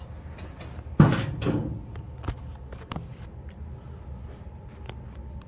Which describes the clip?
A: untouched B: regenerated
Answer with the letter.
A